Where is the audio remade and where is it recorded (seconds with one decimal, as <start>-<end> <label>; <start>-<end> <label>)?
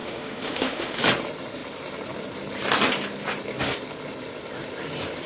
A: 0.0-1.0 remade; 1.0-5.3 recorded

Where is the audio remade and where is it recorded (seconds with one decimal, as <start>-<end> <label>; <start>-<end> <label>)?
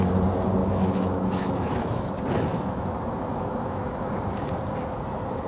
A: 0.0-0.6 recorded; 0.6-2.1 remade; 2.1-2.5 recorded; 2.5-4.1 remade; 4.1-5.5 recorded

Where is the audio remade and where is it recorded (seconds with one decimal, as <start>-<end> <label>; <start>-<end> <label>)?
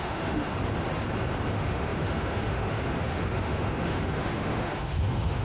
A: 0.0-0.5 remade; 0.5-1.5 recorded; 1.5-5.4 remade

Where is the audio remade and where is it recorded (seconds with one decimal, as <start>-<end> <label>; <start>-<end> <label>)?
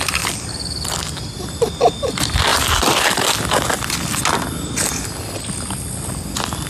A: 0.0-6.7 recorded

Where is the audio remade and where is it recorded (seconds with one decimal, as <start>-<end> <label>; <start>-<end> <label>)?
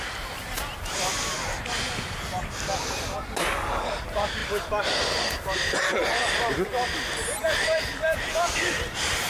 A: 0.0-9.3 recorded